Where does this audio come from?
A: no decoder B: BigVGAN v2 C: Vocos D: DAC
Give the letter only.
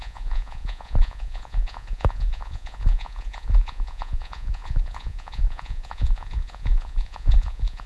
C